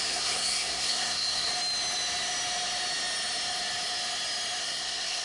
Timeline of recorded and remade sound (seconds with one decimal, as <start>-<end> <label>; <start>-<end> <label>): 0.0-1.5 remade; 1.5-4.6 recorded; 4.6-5.2 remade